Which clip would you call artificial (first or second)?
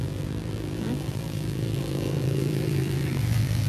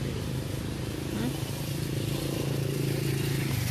first